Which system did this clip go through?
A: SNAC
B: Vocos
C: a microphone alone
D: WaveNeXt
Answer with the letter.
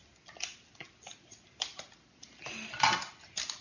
C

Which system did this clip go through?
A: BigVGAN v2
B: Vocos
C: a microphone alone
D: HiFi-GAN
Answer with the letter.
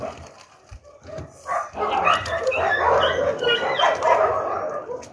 C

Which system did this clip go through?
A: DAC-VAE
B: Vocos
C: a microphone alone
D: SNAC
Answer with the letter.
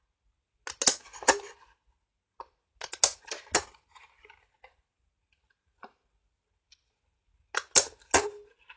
C